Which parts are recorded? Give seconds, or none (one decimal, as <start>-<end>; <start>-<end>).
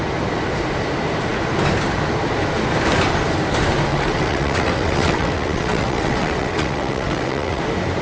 0.0-3.9; 7.6-8.0